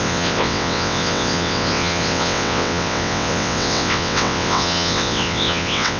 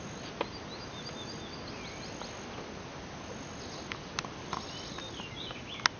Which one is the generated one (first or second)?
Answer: first